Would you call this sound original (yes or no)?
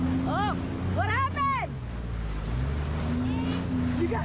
yes